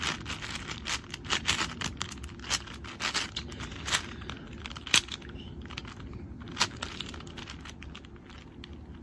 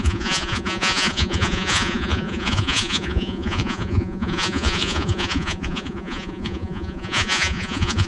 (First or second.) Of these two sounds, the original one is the first